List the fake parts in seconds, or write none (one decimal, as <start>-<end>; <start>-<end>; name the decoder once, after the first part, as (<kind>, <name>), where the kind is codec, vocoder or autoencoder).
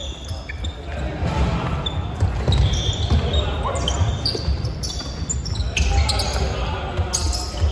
4.0-6.1 (vocoder, BigVGAN v2)